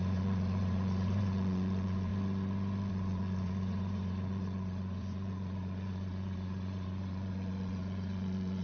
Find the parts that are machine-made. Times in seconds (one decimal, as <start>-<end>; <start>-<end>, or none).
0.0-2.1; 2.9-8.6